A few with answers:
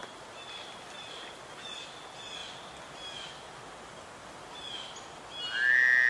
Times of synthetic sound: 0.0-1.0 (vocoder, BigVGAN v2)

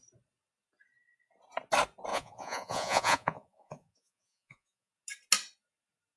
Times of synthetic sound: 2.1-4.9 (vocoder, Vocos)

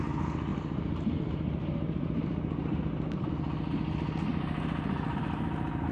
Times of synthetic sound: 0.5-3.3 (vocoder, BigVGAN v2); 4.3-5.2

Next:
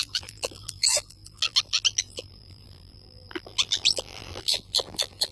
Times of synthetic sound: 0.0-5.3 (vocoder, BigVGAN v2)

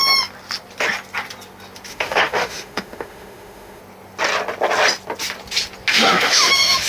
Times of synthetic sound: 1.9-3.8 (autoencoder, DAC-VAE); 5.9-6.9